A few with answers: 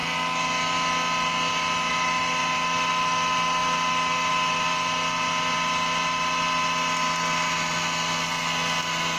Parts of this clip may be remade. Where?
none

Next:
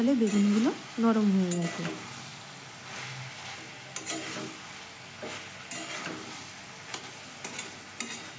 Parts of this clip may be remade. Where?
none

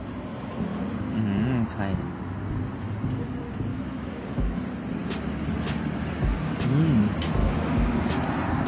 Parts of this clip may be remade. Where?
3.7-4.6; 7.4-8.0

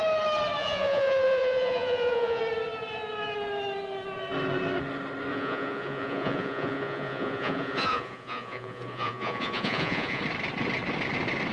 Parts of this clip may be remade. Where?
0.6-2.4; 5.3-10.2

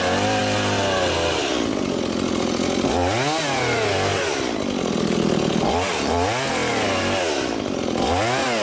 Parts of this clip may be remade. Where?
none

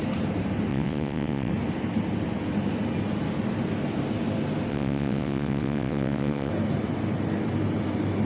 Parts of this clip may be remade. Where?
0.7-1.5; 4.7-6.5

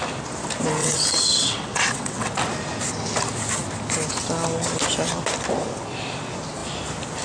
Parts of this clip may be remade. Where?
0.8-2.3